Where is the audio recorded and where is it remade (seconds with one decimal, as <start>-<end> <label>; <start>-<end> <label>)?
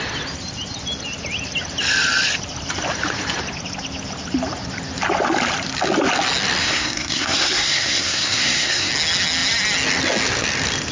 0.0-6.6 recorded; 6.6-8.9 remade; 8.9-10.9 recorded